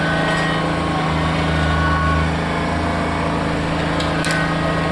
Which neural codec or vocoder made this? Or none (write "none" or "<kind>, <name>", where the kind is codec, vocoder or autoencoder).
none